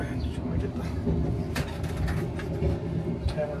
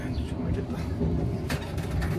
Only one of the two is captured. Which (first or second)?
first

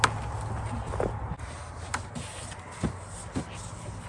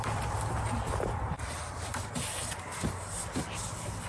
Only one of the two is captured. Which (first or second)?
first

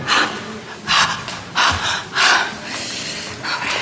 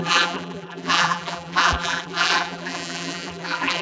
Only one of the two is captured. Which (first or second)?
first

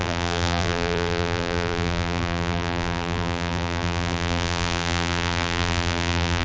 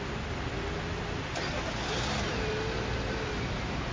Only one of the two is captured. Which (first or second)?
second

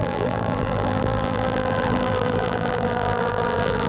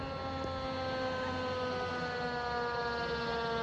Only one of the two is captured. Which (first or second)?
second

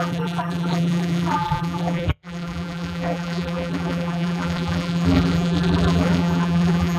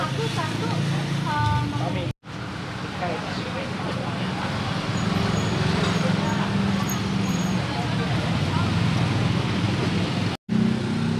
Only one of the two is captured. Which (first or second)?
second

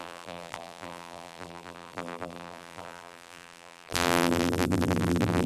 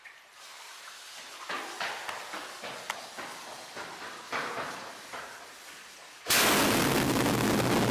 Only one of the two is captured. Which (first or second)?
second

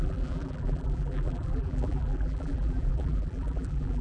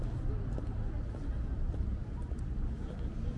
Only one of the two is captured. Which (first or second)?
second